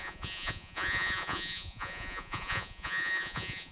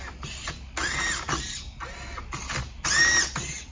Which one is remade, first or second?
first